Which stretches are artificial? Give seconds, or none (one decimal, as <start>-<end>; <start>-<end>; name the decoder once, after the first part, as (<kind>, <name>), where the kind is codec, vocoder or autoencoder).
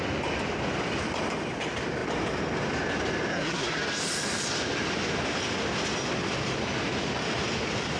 3.3-3.8 (codec, SNAC)